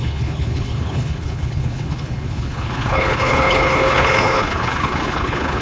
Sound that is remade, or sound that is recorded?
remade